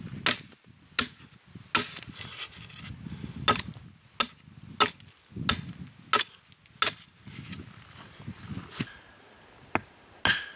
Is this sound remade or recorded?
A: recorded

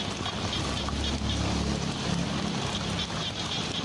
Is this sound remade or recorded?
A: recorded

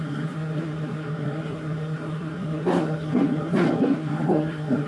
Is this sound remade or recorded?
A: remade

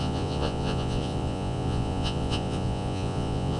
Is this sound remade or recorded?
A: remade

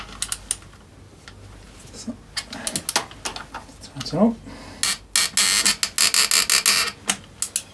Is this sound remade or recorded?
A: recorded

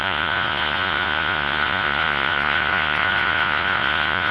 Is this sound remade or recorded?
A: remade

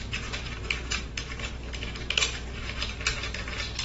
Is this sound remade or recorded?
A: recorded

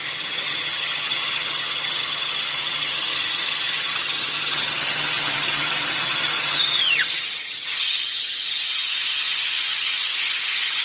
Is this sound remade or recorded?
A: remade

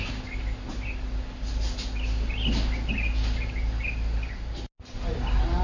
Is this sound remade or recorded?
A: recorded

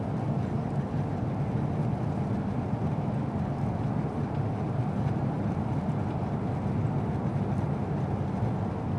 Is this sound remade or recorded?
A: recorded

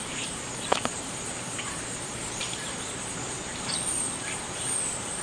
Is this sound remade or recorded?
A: remade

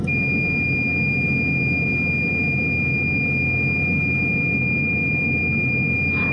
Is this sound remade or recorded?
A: remade